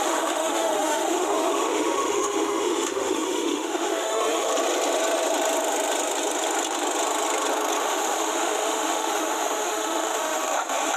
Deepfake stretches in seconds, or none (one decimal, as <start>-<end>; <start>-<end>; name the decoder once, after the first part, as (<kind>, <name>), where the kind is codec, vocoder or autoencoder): 0.0-4.5 (autoencoder, DAC-VAE); 7.8-11.0